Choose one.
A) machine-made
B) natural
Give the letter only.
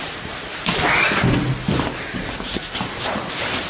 B